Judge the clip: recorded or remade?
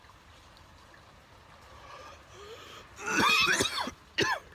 recorded